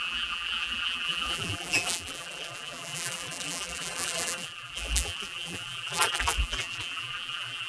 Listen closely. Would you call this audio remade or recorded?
remade